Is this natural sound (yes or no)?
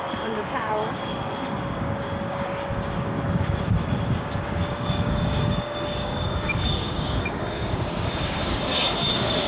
no